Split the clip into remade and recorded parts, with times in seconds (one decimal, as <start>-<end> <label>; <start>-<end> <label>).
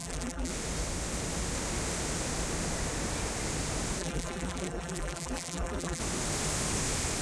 0.0-0.5 remade; 0.5-4.0 recorded; 4.0-6.0 remade; 6.0-7.2 recorded